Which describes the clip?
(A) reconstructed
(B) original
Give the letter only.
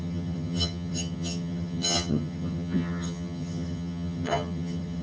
A